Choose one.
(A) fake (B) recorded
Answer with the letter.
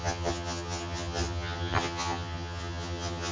A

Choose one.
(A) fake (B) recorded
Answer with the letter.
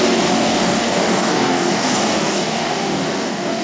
A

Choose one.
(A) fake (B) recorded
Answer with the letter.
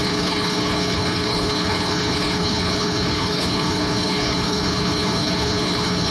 A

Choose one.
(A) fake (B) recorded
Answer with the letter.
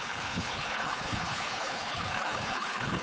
A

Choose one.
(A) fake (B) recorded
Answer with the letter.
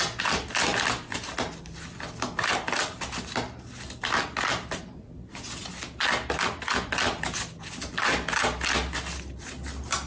B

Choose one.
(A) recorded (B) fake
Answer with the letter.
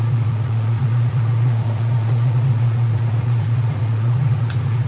B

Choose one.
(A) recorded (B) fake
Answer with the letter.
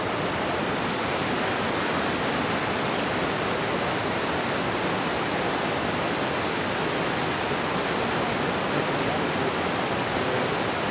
A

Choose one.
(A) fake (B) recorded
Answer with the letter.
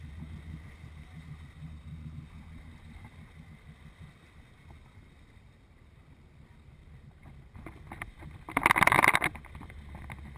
B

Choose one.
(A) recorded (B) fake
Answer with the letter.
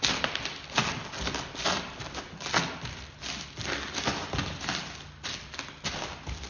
A